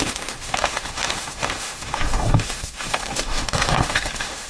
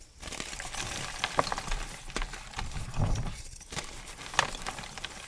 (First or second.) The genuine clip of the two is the second